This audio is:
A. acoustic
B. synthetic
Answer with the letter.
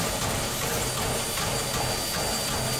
A